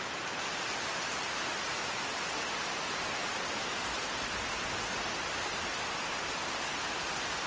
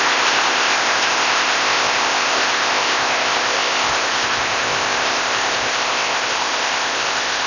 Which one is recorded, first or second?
first